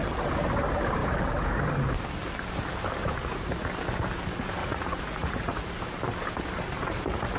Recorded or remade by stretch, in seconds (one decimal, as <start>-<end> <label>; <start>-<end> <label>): 0.0-3.0 recorded; 3.0-3.7 remade; 3.7-4.6 recorded; 4.6-5.7 remade; 5.7-7.4 recorded